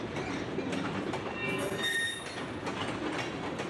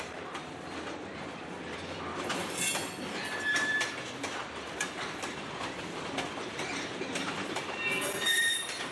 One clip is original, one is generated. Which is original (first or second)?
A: first